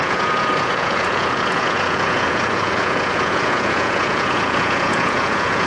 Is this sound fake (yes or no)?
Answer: yes